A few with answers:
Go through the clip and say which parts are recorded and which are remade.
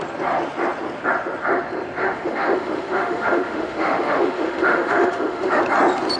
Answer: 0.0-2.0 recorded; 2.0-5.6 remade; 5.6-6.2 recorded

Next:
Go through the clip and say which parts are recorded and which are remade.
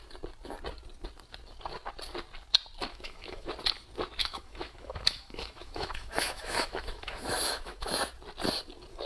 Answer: 0.0-2.9 recorded; 2.9-3.5 remade; 3.5-4.2 recorded; 4.2-8.0 remade; 8.0-9.1 recorded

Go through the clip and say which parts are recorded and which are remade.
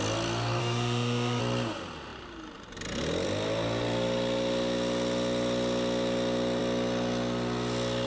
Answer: 0.0-0.6 recorded; 0.6-1.4 remade; 1.4-8.1 recorded